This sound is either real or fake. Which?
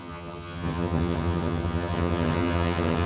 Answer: fake